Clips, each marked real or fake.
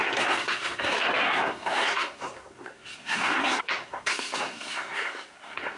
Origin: fake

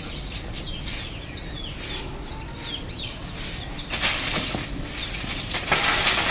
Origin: real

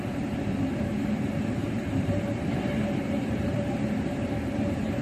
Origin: fake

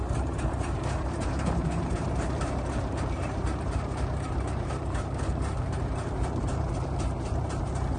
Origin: fake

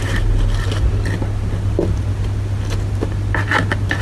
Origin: real